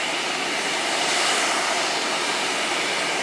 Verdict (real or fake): real